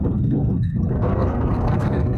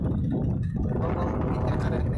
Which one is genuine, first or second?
second